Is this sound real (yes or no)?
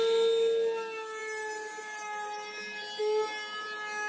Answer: yes